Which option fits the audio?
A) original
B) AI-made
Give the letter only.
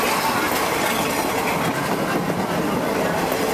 A